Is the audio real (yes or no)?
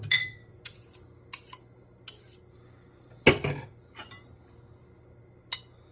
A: yes